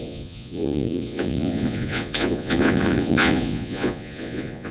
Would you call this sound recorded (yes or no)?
no